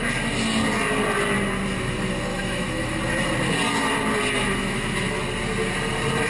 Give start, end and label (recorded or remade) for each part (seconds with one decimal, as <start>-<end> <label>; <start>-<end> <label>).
0.0-2.3 recorded; 2.3-3.0 remade; 3.0-4.4 recorded; 4.4-5.0 remade; 5.0-6.3 recorded

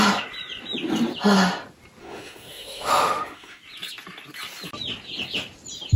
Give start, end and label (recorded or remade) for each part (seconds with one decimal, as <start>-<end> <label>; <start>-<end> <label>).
0.0-2.0 recorded; 2.0-3.6 remade; 3.6-6.0 recorded

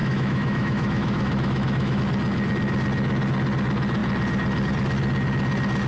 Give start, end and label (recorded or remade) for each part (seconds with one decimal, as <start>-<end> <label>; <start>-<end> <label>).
0.0-2.0 remade; 2.0-5.9 recorded